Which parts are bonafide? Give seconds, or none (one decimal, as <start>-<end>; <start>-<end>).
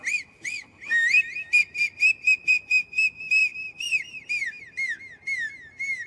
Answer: 0.0-6.1